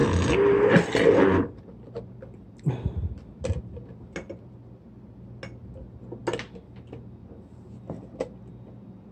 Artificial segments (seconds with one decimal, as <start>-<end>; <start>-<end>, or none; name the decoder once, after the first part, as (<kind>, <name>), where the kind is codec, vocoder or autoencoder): none